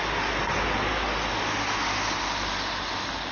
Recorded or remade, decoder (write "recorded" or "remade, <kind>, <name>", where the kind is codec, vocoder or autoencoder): recorded